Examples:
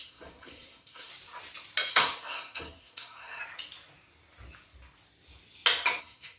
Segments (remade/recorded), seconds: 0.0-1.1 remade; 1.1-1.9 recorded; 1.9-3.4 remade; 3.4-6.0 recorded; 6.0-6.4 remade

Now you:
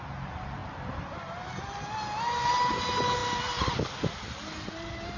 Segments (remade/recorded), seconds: 0.0-5.2 recorded

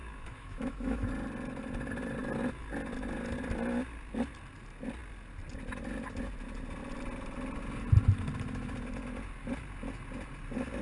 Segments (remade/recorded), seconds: 0.0-1.1 remade; 1.1-10.8 recorded

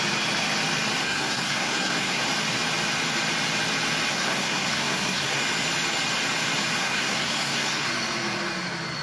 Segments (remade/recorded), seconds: 0.0-1.0 recorded; 1.0-2.2 remade; 2.2-4.1 recorded; 4.1-5.4 remade; 5.4-6.8 recorded; 6.8-7.9 remade; 7.9-9.0 recorded

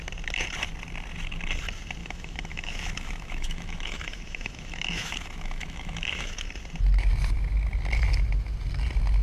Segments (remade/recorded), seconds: 0.0-2.0 recorded; 2.0-6.5 remade; 6.5-9.2 recorded

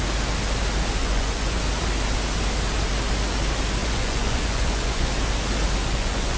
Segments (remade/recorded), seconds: 0.0-1.0 recorded; 1.0-1.6 remade; 1.6-3.8 recorded; 3.8-5.1 remade; 5.1-5.8 recorded; 5.8-6.4 remade